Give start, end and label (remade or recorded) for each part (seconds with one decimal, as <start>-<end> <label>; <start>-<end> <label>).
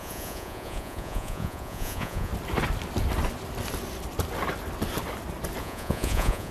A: 0.0-2.3 remade; 2.3-5.6 recorded; 5.6-6.5 remade